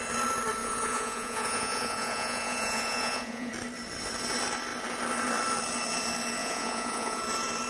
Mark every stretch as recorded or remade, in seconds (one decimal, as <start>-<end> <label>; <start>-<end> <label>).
0.0-0.6 recorded; 0.6-3.5 remade; 3.5-6.4 recorded; 6.4-7.2 remade; 7.2-7.7 recorded